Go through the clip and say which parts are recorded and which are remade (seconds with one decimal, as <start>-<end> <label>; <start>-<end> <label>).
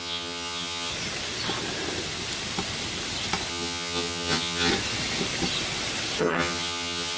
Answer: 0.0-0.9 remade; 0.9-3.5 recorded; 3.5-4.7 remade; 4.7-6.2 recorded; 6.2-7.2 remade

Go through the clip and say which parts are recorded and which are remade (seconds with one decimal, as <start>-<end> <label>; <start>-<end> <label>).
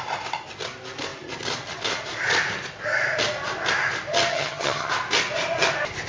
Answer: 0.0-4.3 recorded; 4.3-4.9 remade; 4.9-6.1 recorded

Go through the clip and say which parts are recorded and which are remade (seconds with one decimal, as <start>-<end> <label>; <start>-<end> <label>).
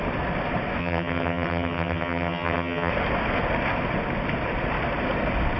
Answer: 0.0-0.8 recorded; 0.8-2.9 remade; 2.9-5.6 recorded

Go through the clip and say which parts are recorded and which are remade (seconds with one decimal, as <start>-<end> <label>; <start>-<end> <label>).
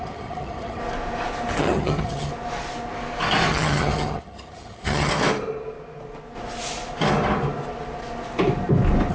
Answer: 0.0-0.8 remade; 0.8-1.6 recorded; 1.6-2.3 remade; 2.3-3.5 recorded; 3.5-5.1 remade; 5.1-9.1 recorded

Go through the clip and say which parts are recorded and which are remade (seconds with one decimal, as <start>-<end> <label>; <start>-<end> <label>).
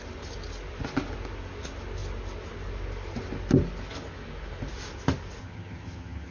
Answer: 0.0-5.4 recorded; 5.4-6.3 remade